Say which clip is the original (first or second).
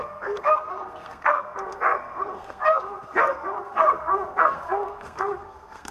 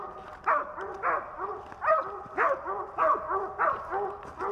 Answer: second